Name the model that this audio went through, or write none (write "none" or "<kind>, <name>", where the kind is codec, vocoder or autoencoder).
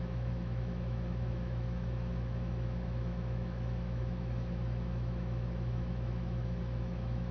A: autoencoder, DAC-VAE